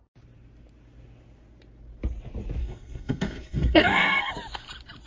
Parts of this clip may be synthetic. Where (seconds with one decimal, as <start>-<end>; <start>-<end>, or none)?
2.6-4.3